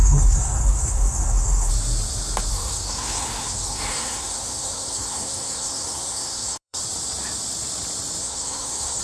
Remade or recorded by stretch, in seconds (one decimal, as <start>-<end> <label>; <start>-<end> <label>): 0.0-1.7 remade; 1.7-2.5 recorded; 2.5-6.8 remade; 6.8-8.2 recorded; 8.2-9.0 remade